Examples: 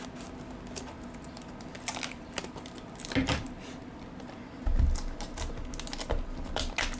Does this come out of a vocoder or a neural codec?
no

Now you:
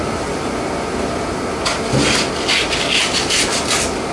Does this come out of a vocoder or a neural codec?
no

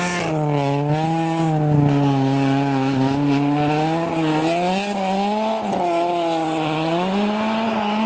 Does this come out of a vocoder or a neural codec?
no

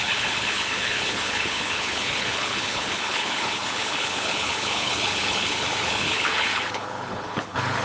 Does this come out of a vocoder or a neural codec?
yes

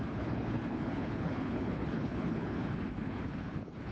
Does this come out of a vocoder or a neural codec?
yes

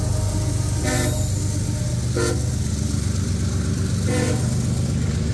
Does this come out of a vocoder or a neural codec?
no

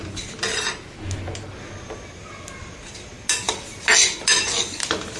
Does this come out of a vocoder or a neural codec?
no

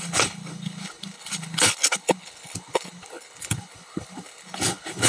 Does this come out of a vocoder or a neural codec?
yes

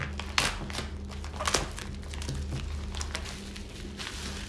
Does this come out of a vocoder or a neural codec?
no